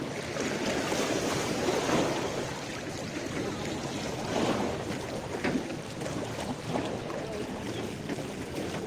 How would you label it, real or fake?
real